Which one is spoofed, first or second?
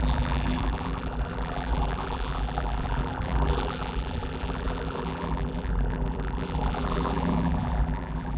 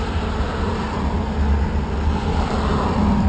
first